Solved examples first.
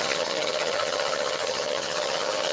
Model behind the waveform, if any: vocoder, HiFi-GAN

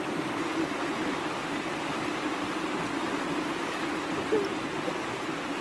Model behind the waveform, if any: none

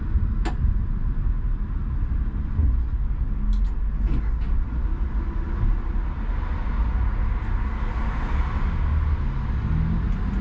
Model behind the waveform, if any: none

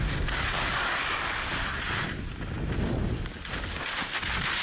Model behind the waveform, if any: none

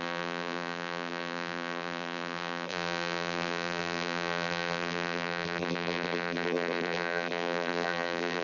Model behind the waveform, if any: vocoder, BigVGAN v2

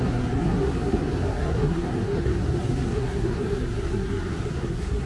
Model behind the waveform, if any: codec, SNAC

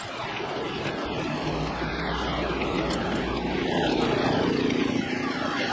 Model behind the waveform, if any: none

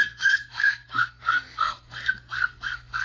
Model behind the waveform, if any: codec, SNAC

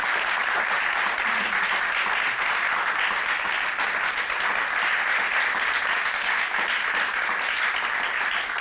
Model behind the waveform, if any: none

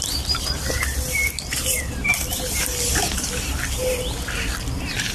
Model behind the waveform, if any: vocoder, BigVGAN v2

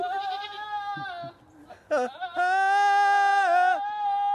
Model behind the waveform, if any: none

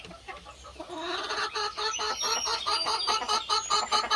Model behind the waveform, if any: none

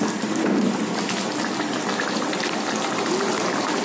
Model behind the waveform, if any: none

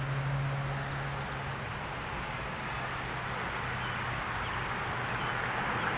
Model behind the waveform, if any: none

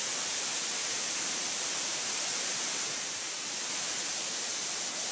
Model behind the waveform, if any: vocoder, BigVGAN v2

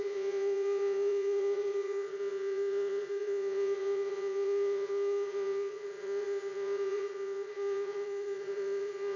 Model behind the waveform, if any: vocoder, Vocos